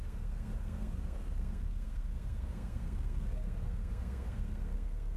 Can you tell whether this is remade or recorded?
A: remade